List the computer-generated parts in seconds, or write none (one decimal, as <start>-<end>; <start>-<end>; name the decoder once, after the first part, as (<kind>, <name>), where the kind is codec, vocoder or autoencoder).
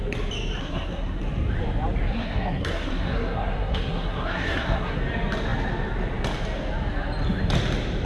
0.6-1.2 (codec, SNAC); 2.1-5.0